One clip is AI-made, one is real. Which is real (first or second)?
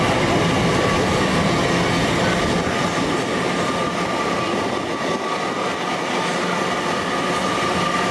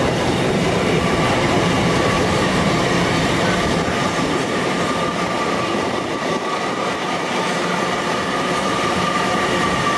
first